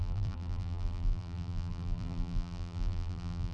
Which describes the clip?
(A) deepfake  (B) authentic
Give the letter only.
A